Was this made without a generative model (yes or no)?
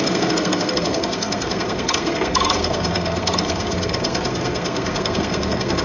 no